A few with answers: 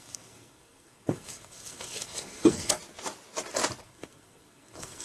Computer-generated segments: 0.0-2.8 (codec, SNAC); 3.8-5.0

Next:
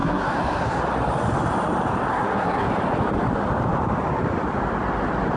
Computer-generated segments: 0.0-0.8 (codec, SNAC); 2.1-2.7

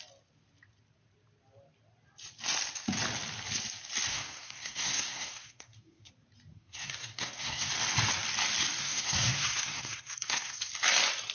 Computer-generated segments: 4.1-6.1 (codec, SNAC); 6.5-7.7; 8.8-10.7